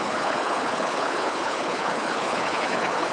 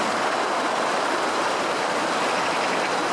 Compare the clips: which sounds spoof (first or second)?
first